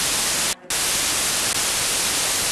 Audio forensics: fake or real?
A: real